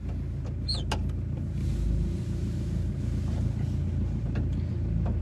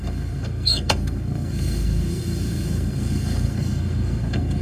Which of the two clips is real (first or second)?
first